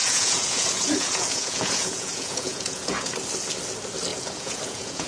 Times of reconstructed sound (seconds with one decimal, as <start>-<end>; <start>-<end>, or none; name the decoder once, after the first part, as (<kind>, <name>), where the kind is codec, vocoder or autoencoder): 0.0-3.1 (vocoder, Vocos); 4.1-5.1